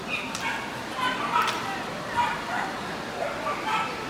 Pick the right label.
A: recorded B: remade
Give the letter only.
A